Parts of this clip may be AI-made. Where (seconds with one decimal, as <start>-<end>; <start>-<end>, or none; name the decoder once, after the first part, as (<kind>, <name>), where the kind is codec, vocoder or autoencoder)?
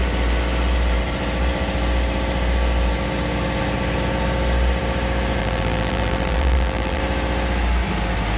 5.4-7.0 (vocoder, BigVGAN v2)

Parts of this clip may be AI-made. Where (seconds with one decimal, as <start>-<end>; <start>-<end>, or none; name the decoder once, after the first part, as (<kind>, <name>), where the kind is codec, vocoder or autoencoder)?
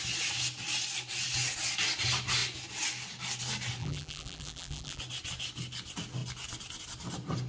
3.8-5.0 (vocoder, BigVGAN v2)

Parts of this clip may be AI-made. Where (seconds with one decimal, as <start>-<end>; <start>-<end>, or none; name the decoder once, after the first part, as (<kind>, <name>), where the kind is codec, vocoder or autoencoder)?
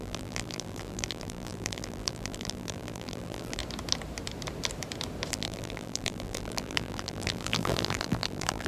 0.0-3.6 (vocoder, BigVGAN v2); 5.3-8.7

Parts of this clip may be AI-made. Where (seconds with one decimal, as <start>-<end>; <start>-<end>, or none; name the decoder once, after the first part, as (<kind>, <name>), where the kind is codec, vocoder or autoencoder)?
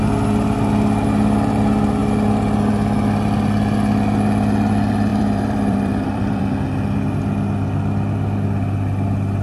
5.1-6.5 (vocoder, BigVGAN v2)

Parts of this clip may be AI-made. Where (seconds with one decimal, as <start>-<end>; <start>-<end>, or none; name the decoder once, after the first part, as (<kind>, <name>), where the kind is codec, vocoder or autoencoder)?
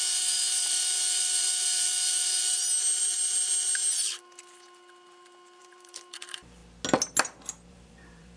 0.0-2.4 (vocoder, BigVGAN v2); 5.6-6.6; 7.7-8.4